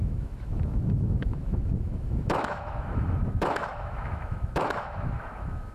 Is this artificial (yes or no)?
yes